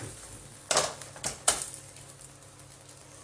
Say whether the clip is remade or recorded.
recorded